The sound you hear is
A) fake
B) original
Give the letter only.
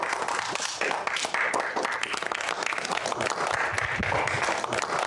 B